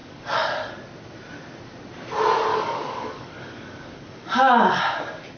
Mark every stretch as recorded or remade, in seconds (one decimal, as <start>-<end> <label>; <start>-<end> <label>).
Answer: 0.0-0.7 remade; 0.7-2.5 recorded; 2.5-4.8 remade; 4.8-5.4 recorded